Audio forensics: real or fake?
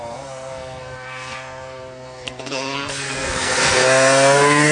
fake